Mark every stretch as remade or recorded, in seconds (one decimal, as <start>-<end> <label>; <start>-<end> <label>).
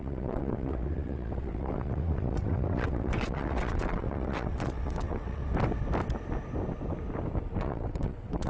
0.0-5.4 remade; 5.4-7.6 recorded; 7.6-8.5 remade